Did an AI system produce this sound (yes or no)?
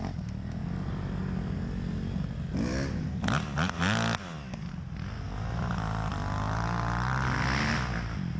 no